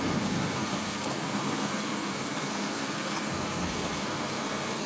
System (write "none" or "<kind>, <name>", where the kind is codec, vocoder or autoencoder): codec, SNAC